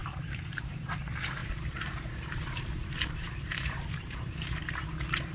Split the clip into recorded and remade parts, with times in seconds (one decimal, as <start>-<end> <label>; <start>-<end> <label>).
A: 0.0-0.8 remade; 0.8-1.4 recorded; 1.4-4.6 remade; 4.6-5.3 recorded